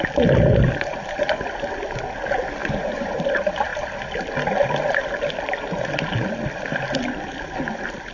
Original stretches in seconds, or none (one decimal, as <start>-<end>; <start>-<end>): 0.0-2.6; 3.2-8.1